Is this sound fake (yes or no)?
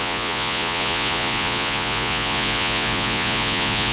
yes